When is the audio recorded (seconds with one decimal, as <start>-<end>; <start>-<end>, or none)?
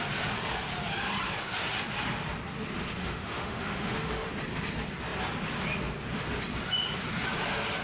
0.0-3.0; 4.3-7.8